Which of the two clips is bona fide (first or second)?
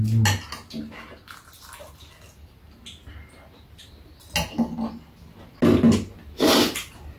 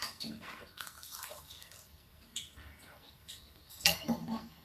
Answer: first